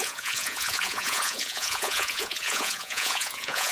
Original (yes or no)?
no